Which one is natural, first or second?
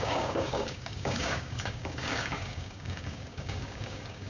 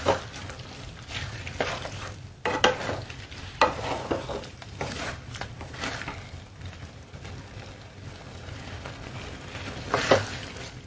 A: second